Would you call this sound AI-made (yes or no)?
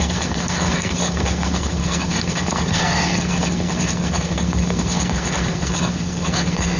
yes